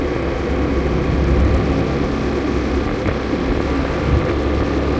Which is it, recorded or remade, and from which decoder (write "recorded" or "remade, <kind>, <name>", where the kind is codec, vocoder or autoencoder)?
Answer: recorded